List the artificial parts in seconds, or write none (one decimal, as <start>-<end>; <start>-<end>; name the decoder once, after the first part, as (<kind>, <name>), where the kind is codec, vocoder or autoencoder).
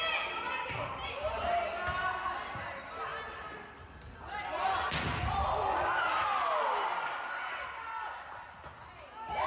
none